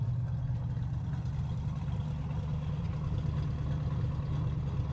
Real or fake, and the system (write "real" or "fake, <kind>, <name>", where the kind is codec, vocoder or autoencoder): real